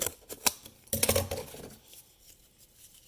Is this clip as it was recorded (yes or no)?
yes